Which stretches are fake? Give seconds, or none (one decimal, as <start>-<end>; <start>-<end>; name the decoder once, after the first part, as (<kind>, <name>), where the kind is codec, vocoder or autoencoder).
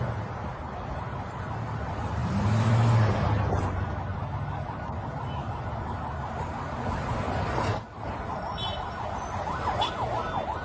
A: none